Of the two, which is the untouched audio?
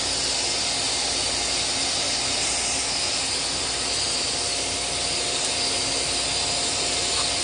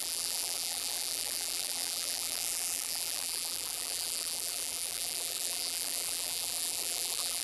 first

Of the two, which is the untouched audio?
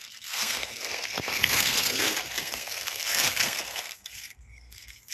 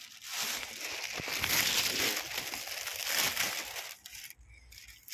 second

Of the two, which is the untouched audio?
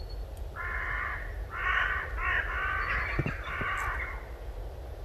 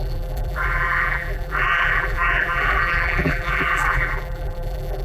first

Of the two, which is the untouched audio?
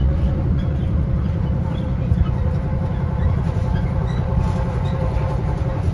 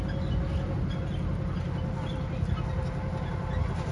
second